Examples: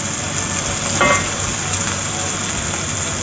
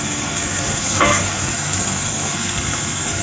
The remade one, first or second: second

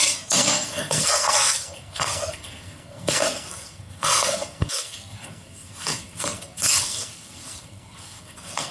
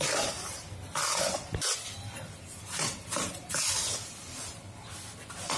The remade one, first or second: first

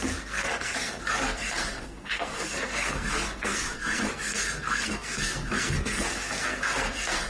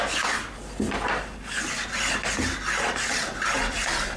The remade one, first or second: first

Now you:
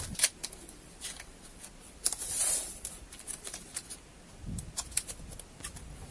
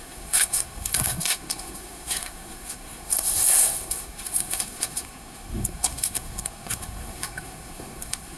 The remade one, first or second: second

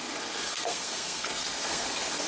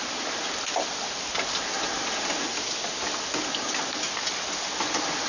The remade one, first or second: first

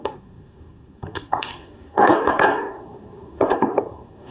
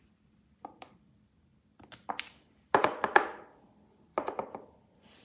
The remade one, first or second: first